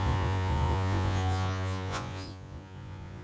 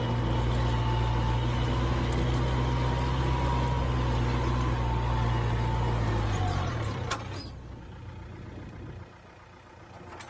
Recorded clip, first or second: second